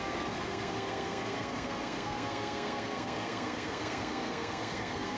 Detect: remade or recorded remade